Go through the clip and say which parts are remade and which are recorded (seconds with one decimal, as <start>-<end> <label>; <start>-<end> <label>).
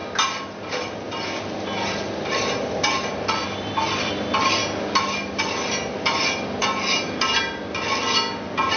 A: 0.0-8.8 recorded